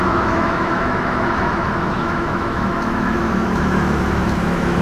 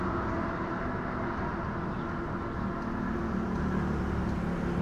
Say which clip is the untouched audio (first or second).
second